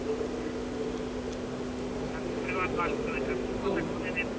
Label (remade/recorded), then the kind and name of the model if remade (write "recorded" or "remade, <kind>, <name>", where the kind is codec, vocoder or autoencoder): recorded